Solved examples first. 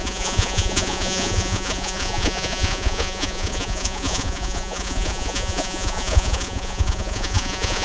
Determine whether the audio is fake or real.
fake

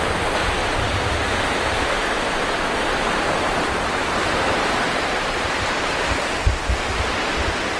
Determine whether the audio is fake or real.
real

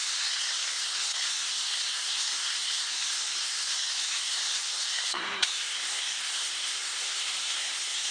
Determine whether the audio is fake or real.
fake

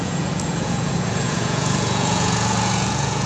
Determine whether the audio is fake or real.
fake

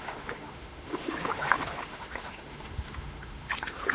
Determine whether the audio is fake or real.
fake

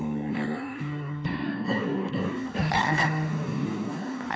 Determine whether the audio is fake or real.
fake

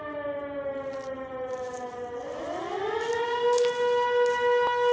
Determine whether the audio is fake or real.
real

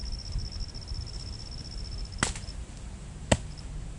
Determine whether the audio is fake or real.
real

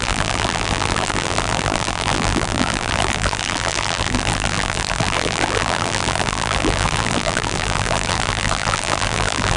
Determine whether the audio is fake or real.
fake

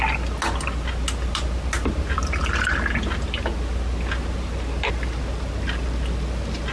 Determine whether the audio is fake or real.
real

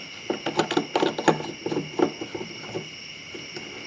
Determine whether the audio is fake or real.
real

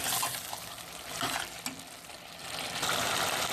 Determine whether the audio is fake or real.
real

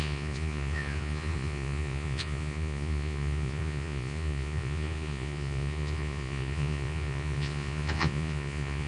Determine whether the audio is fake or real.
fake